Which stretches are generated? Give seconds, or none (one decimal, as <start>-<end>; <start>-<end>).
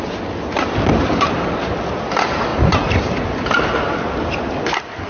none